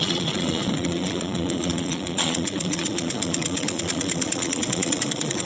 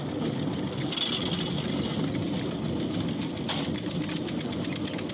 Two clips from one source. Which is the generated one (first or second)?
first